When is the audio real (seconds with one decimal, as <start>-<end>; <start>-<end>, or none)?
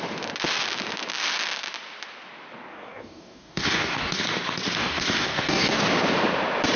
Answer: 0.0-2.7; 4.2-4.8; 5.8-6.8